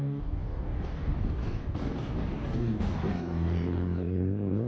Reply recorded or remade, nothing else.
remade